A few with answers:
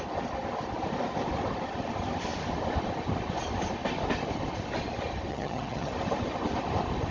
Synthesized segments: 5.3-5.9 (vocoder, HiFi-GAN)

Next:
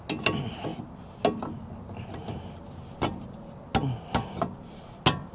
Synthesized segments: none